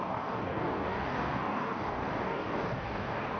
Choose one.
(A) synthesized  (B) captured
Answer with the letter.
A